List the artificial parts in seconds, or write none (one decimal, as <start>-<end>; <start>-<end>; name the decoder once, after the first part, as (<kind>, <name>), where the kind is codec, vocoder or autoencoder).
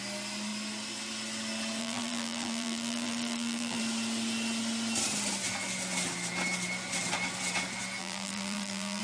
1.8-3.8 (vocoder, BigVGAN v2); 8.0-9.0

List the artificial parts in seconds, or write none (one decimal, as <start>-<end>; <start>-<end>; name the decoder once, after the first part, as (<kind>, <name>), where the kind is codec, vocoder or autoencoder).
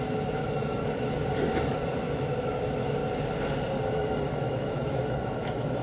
0.0-1.2 (autoencoder, DAC-VAE); 1.9-3.0; 3.8-5.8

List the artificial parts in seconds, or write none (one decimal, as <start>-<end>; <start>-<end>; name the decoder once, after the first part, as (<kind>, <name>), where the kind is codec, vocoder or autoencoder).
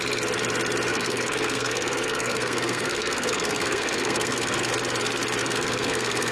0.9-4.7 (codec, SNAC); 5.4-6.3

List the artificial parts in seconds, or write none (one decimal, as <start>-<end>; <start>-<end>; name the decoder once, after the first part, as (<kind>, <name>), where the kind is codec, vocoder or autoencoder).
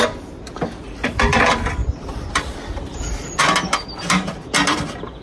none